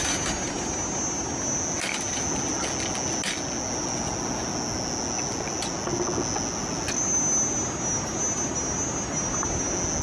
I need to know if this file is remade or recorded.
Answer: recorded